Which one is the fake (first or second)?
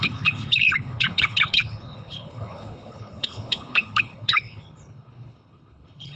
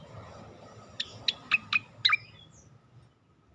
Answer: first